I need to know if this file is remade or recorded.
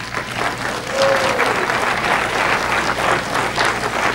recorded